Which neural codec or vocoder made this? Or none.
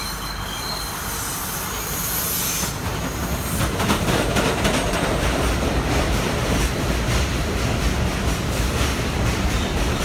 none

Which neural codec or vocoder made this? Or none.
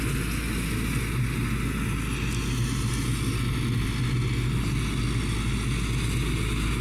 none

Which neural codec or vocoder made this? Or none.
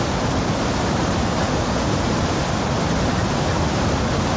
none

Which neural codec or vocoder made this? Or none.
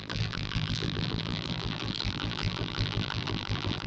vocoder, BigVGAN v2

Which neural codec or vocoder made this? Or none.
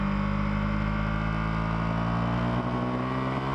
none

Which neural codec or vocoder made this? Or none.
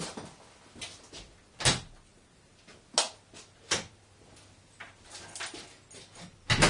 none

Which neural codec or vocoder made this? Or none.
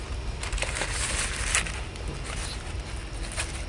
none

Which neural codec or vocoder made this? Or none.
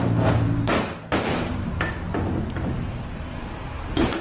vocoder, BigVGAN v2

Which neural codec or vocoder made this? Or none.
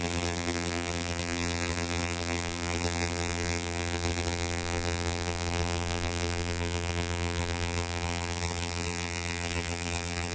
vocoder, BigVGAN v2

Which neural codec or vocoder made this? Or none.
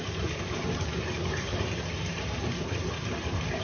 vocoder, BigVGAN v2